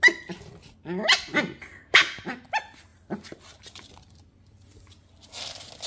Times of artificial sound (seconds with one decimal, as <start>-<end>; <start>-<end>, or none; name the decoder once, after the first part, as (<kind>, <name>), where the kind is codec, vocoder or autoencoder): 1.7-2.2 (codec, DAC)